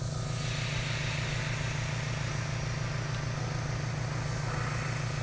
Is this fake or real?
real